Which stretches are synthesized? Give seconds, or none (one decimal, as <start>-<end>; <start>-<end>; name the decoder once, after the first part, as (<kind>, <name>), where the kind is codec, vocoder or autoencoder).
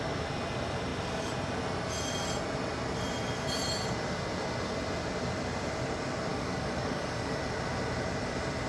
6.3-7.4 (codec, DAC)